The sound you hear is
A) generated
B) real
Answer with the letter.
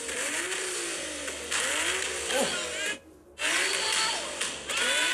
B